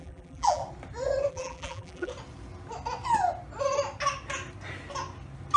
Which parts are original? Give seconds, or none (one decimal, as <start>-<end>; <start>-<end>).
0.6-1.3; 2.1-5.6